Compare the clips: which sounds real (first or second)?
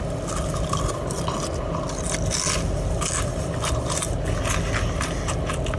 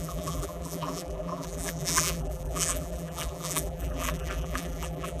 first